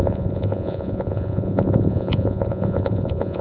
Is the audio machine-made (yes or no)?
yes